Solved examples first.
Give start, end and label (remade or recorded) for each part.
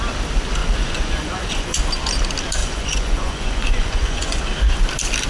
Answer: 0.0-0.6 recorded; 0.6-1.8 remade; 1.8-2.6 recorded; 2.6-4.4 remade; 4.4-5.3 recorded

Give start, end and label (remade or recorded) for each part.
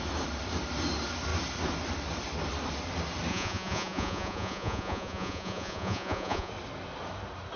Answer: 0.0-3.3 recorded; 3.3-6.5 remade; 6.5-7.6 recorded